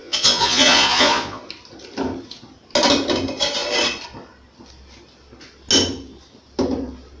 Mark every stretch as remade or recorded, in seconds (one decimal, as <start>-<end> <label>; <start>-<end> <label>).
0.0-1.4 remade; 1.4-7.2 recorded

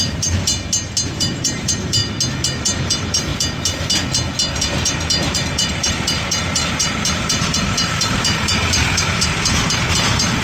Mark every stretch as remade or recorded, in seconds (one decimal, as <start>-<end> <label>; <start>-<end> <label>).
0.0-0.5 remade; 0.5-1.2 recorded; 1.2-2.0 remade; 2.0-2.6 recorded; 2.6-3.3 remade; 3.3-4.5 recorded; 4.5-10.4 remade